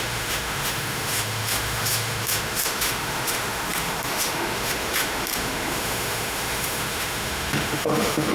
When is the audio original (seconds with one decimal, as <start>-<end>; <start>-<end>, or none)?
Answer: none